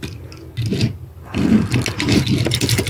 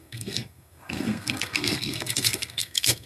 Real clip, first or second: first